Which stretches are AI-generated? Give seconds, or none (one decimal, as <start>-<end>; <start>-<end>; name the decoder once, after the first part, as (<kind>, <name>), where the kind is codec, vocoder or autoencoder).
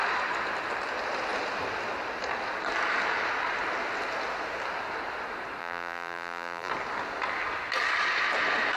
5.6-6.7 (vocoder, BigVGAN v2)